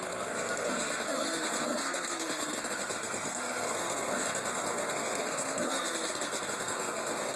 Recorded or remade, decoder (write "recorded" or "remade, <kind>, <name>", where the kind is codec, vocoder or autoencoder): remade, codec, SNAC